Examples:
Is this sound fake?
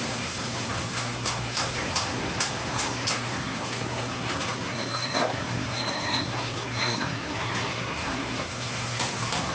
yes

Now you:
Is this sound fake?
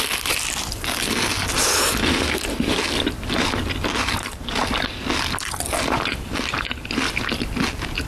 no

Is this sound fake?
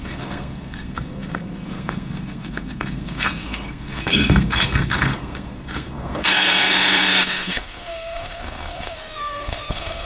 yes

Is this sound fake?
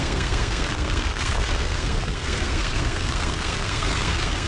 yes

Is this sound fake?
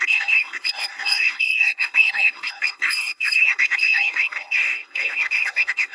yes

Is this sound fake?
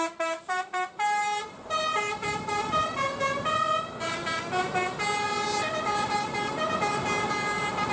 no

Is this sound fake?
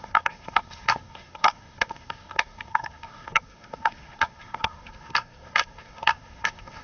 yes